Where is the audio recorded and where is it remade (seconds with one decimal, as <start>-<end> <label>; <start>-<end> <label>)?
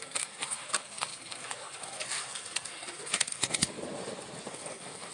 0.0-3.8 remade; 3.8-4.5 recorded; 4.5-5.1 remade